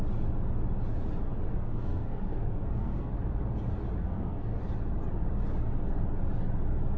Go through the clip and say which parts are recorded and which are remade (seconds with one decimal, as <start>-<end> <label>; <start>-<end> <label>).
0.0-1.5 recorded; 1.5-3.1 remade; 3.1-4.0 recorded; 4.0-4.6 remade; 4.6-7.0 recorded

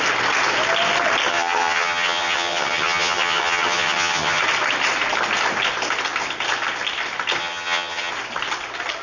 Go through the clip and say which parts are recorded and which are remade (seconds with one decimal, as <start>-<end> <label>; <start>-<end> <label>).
0.0-1.3 recorded; 1.3-4.4 remade; 4.4-7.4 recorded; 7.4-8.1 remade; 8.1-9.0 recorded

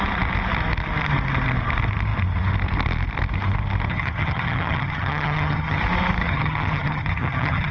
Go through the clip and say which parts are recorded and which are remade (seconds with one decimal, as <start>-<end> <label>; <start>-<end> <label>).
0.0-3.9 recorded; 3.9-5.8 remade; 5.8-6.2 recorded; 6.2-7.7 remade

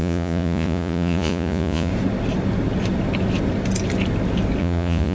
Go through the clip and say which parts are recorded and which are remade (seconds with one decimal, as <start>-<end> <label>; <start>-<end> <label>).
0.0-1.9 remade; 1.9-4.6 recorded; 4.6-5.1 remade

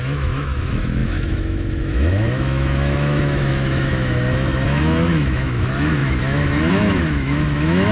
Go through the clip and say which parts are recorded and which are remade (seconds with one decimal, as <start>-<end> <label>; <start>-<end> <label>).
0.0-7.9 remade

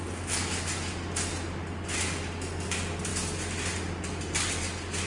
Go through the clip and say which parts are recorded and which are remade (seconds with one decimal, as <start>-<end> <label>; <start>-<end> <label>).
0.0-5.1 recorded